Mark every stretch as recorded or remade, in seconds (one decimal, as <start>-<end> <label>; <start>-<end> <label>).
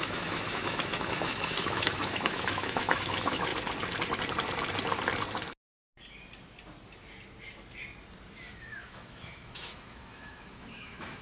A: 0.0-3.5 remade; 3.5-8.6 recorded; 8.6-11.2 remade